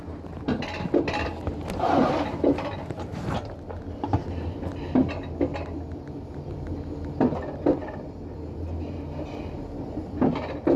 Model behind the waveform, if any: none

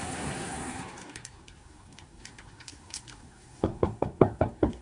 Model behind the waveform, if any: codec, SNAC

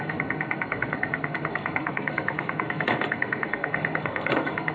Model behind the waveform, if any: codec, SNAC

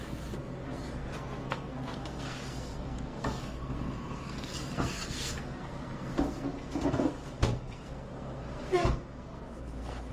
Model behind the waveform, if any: codec, SNAC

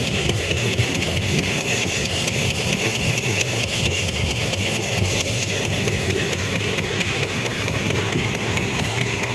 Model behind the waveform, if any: codec, SNAC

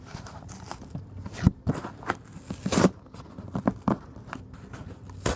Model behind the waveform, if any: none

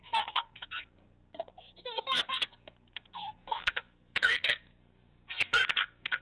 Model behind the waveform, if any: codec, SNAC